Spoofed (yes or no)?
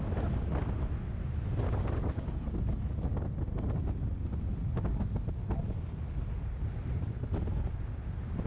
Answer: no